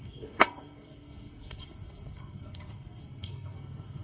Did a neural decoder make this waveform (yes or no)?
yes